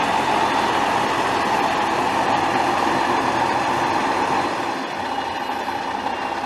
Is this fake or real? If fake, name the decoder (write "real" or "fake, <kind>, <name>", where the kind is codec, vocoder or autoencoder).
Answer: real